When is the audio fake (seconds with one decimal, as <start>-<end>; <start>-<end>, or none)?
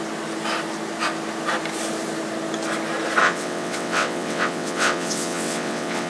3.2-6.1